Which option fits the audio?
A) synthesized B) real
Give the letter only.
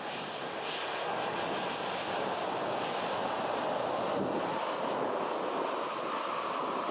B